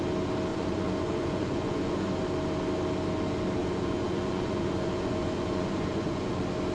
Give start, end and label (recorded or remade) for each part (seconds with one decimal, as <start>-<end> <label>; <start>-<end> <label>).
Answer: 0.0-0.5 recorded; 0.5-2.1 remade; 2.1-3.6 recorded; 3.6-6.3 remade; 6.3-6.7 recorded